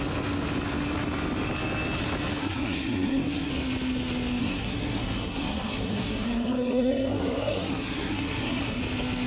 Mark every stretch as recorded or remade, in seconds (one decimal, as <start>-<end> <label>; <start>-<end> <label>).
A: 0.0-2.4 recorded; 2.4-3.5 remade; 3.5-4.4 recorded; 4.4-8.8 remade; 8.8-9.3 recorded